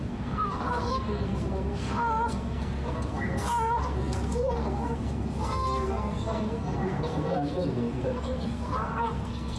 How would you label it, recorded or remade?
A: remade